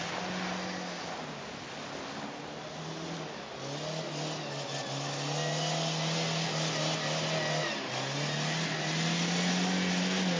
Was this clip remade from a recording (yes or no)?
no